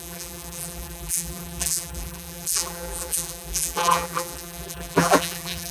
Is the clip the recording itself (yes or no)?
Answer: no